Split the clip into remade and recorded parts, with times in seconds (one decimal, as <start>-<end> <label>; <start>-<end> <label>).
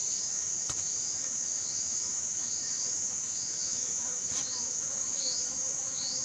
0.0-6.2 remade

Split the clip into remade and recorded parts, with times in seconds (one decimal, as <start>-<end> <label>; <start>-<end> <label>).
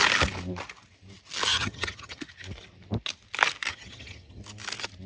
0.0-1.5 recorded; 1.5-2.2 remade; 2.2-3.7 recorded; 3.7-4.4 remade; 4.4-5.1 recorded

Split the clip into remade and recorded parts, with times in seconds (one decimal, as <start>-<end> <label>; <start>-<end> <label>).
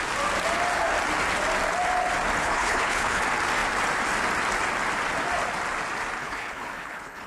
0.0-2.4 recorded; 2.4-3.2 remade; 3.2-6.2 recorded; 6.2-7.3 remade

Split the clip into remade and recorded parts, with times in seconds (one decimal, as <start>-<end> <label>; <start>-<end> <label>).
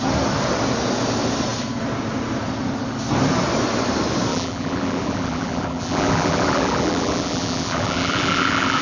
0.0-4.3 recorded; 4.3-8.8 remade